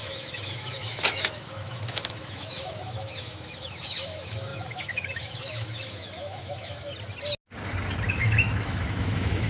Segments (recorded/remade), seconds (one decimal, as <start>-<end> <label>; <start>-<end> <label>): 0.0-6.9 remade; 6.9-8.1 recorded; 8.1-9.5 remade